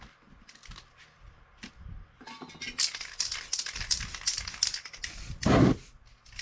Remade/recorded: recorded